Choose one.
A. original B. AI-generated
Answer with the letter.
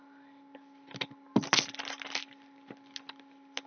A